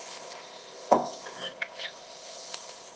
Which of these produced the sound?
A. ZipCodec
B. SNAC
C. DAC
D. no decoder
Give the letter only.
A